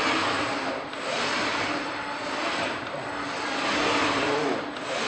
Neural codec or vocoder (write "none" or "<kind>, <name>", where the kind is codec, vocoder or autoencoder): none